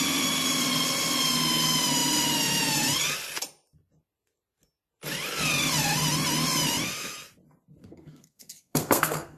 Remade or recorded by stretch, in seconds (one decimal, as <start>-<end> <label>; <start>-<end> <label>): 0.0-7.8 recorded; 7.8-9.4 remade

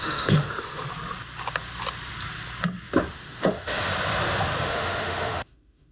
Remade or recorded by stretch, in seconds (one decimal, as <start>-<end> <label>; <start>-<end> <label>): 0.0-0.9 remade; 0.9-3.1 recorded; 3.1-3.9 remade; 3.9-4.6 recorded; 4.6-5.9 remade